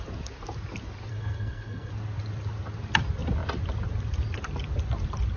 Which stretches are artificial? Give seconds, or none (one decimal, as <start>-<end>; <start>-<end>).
1.1-1.9